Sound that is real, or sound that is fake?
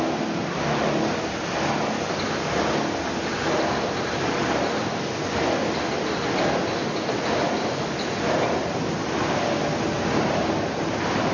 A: real